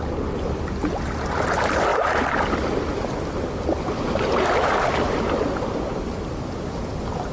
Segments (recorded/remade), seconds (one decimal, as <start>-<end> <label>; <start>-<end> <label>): 0.0-7.3 recorded